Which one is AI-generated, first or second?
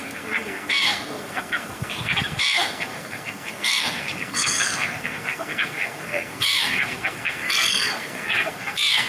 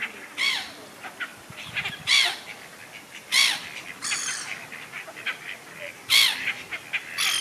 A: first